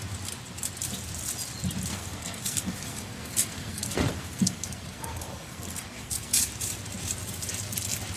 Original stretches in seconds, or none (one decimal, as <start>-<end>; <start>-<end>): 0.0-1.9; 6.3-8.2